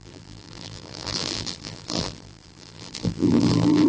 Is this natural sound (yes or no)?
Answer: no